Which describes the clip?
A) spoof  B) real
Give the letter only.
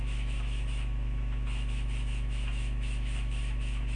A